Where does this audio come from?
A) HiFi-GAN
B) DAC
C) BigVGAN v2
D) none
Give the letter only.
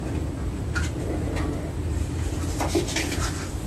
D